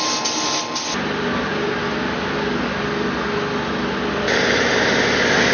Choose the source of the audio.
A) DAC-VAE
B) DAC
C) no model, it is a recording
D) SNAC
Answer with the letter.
C